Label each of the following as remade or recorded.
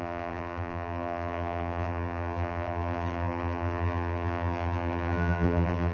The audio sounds remade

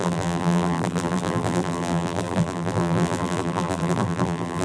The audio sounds remade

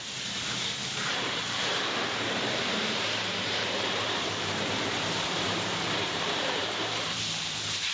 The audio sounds remade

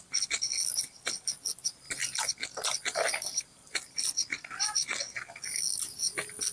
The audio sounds recorded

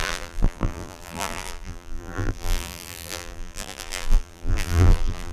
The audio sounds remade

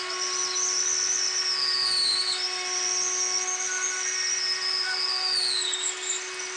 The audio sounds recorded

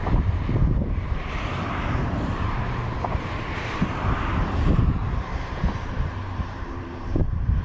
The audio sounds remade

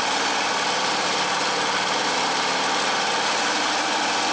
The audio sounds remade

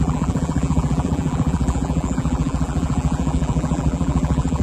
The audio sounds remade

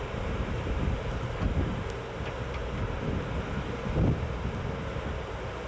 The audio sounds recorded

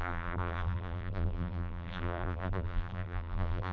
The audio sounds remade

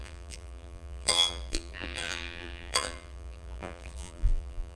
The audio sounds remade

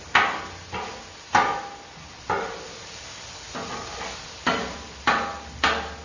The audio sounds recorded